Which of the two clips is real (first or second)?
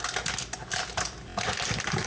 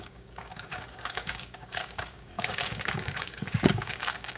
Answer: first